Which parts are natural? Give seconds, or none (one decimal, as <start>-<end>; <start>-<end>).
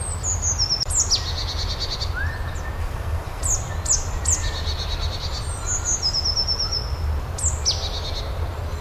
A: 0.0-2.8; 3.4-8.8